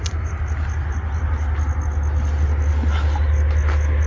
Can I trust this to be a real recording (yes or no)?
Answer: yes